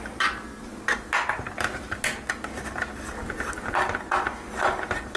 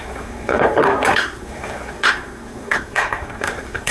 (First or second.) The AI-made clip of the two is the second